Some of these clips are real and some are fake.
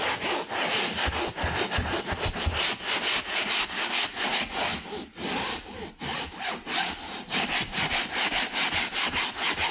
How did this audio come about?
real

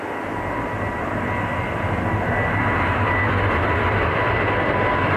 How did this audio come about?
real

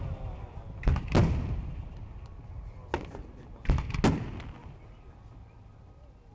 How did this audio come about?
real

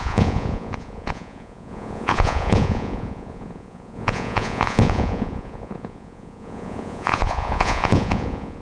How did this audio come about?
fake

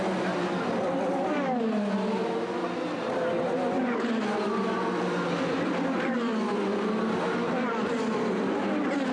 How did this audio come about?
real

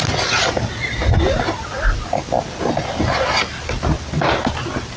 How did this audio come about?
real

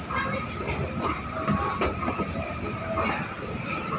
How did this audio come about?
real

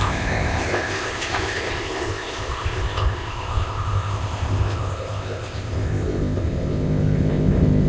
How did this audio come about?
fake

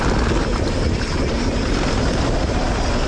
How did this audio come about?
real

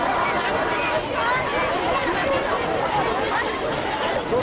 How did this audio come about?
real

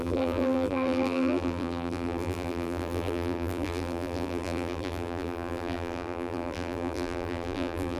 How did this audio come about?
fake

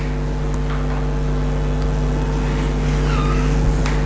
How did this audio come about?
real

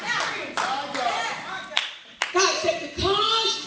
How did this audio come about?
real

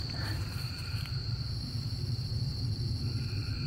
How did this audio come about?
fake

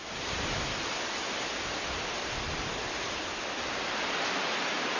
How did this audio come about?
real